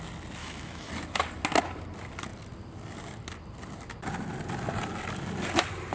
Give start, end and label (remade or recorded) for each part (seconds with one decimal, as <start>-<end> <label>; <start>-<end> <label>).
0.0-0.4 recorded; 0.4-0.9 remade; 0.9-5.9 recorded